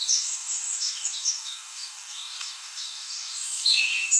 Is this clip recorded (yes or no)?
no